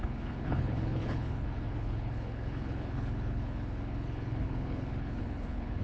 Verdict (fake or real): fake